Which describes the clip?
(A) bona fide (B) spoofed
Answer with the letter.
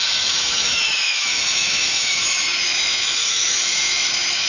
B